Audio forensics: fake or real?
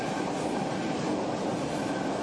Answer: real